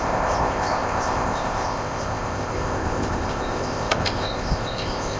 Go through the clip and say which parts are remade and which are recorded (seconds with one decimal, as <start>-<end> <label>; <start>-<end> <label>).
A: 0.0-5.2 remade